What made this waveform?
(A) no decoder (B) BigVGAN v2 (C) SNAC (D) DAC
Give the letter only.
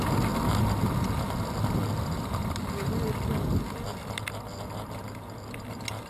A